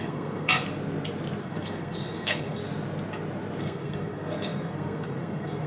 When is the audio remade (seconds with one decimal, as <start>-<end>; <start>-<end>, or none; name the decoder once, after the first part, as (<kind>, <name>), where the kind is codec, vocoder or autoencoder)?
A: 0.0-0.5 (codec, SNAC); 1.4-2.6; 3.6-5.7